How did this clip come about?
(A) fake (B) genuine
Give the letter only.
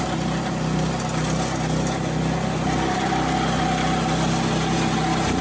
B